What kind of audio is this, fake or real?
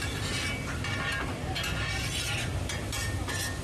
real